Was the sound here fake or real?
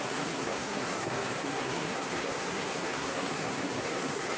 fake